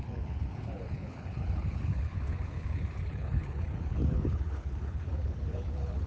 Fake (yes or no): yes